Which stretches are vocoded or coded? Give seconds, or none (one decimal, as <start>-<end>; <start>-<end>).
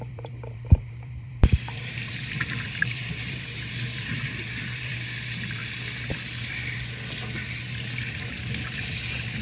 0.0-5.6; 8.1-9.4